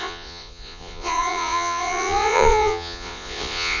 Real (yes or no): no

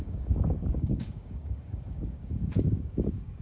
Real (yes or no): no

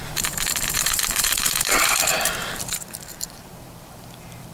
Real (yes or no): no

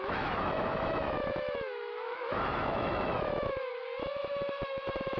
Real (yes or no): no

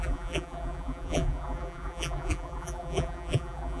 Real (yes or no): no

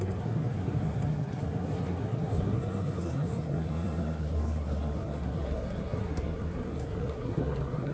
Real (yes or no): no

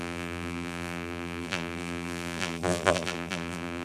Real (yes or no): no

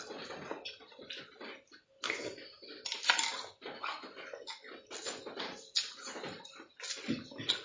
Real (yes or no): yes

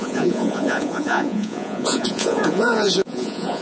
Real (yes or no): no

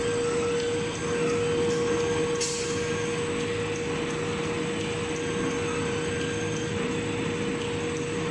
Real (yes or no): yes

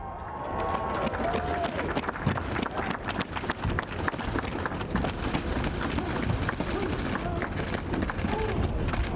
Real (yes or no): yes